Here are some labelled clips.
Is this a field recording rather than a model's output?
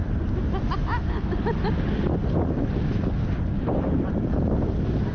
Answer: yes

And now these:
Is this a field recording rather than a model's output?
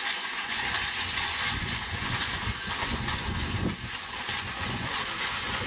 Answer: no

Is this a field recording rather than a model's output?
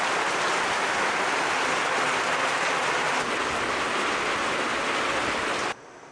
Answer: yes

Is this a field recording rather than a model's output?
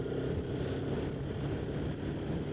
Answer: yes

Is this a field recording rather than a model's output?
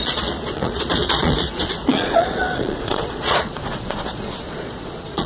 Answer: no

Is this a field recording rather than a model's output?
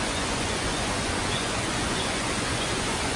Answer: no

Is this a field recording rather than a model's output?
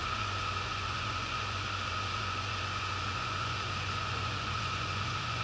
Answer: no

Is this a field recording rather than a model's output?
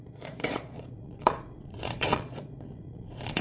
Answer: no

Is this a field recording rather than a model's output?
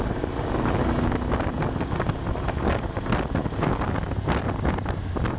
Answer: yes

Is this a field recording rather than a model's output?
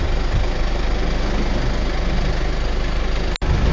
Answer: yes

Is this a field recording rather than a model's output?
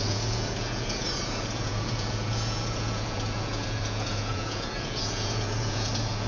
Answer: no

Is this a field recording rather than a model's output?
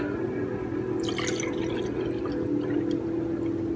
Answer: yes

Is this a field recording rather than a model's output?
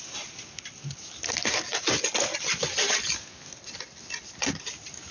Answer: yes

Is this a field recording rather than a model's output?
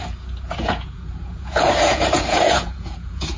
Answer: no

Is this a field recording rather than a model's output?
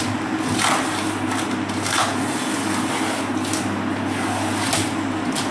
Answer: yes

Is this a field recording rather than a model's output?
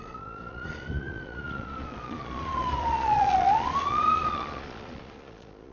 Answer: no